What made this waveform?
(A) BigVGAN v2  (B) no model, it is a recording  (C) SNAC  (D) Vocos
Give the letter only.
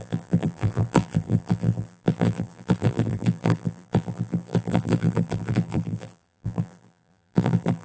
A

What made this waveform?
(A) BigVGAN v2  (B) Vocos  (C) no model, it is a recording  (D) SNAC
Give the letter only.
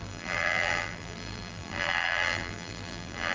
A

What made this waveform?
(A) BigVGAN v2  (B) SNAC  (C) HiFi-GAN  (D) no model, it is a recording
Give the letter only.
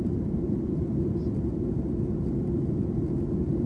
D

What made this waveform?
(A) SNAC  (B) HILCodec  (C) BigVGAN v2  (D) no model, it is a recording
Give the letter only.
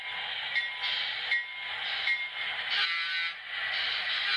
D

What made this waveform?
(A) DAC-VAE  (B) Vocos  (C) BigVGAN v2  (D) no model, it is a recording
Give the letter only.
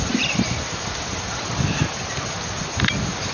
C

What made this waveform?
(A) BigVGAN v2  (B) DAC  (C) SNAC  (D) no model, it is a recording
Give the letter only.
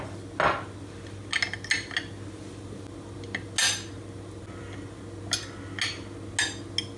D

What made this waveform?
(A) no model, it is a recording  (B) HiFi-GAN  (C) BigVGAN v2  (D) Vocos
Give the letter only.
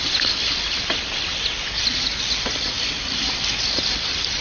A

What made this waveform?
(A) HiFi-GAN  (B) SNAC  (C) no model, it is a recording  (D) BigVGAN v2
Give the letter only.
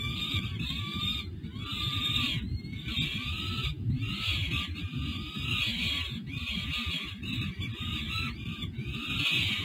C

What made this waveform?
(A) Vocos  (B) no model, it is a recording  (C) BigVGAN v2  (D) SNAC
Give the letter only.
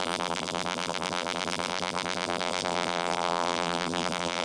C